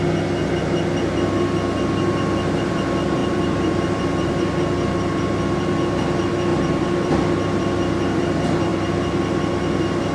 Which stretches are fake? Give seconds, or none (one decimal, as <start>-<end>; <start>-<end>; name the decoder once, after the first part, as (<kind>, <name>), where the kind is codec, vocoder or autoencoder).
3.2-4.0 (vocoder, BigVGAN v2); 6.5-7.1